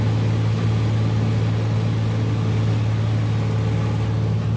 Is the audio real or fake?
real